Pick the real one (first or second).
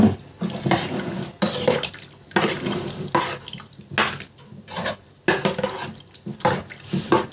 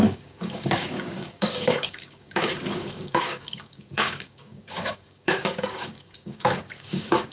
first